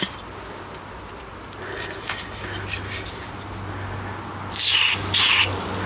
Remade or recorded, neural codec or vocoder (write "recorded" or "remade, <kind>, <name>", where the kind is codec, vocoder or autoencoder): recorded